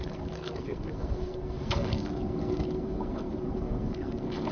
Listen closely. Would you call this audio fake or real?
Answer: fake